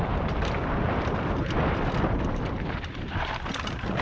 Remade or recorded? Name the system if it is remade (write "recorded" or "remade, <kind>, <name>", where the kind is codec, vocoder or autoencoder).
recorded